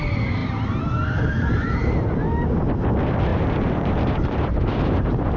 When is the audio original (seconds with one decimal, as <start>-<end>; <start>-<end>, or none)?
0.0-3.3

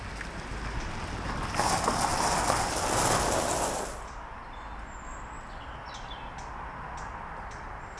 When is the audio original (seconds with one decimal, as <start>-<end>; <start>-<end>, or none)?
0.0-8.0

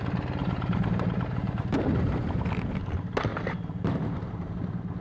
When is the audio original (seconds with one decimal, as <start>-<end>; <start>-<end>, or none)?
0.0-0.4; 2.8-3.3; 4.6-5.0